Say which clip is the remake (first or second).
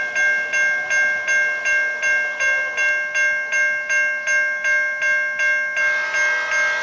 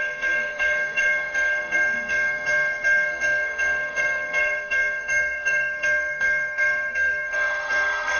second